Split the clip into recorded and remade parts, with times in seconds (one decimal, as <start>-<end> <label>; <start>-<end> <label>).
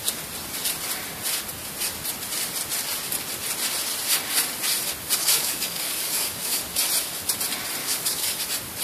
0.0-5.2 recorded; 5.2-6.6 remade; 6.6-7.8 recorded; 7.8-8.4 remade; 8.4-8.8 recorded